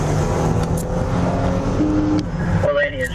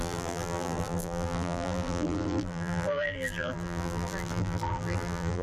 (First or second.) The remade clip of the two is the second